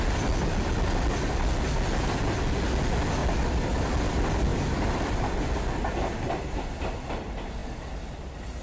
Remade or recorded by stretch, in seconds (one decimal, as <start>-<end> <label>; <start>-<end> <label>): 0.0-3.2 recorded; 3.2-3.9 remade; 3.9-4.5 recorded; 4.5-5.3 remade; 5.3-8.6 recorded